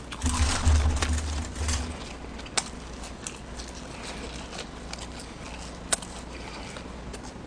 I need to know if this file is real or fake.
real